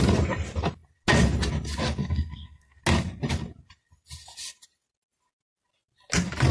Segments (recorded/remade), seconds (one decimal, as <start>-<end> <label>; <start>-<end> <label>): 0.0-2.0 recorded; 2.0-2.8 remade; 2.8-6.5 recorded